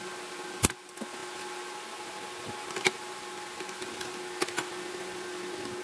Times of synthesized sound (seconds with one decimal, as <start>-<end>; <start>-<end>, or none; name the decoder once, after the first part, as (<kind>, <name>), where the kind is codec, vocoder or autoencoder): none